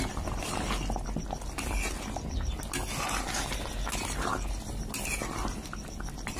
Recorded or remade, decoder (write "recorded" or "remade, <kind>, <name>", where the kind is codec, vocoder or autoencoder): recorded